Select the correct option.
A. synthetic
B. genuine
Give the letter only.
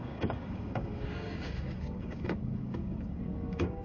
A